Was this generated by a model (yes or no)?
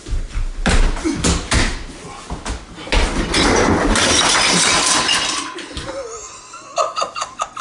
no